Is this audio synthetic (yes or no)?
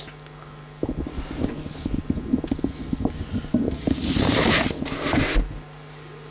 no